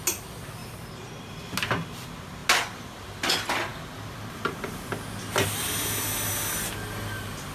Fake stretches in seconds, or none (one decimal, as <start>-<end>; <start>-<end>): none